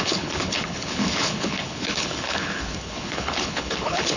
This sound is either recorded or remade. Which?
remade